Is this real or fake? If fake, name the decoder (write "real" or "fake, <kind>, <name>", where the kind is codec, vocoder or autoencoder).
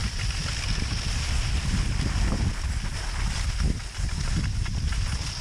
real